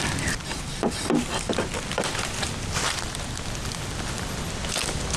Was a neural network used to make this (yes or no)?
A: no